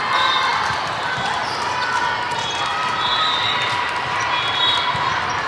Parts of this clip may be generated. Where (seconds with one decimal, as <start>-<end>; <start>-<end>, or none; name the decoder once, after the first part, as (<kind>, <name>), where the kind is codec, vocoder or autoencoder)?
none